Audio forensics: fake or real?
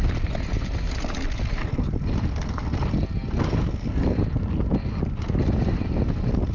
real